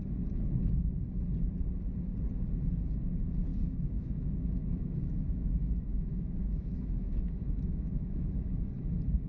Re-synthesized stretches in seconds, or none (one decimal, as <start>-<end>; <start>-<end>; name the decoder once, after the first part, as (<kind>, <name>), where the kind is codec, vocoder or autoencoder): 3.5-8.7 (autoencoder, DAC-VAE)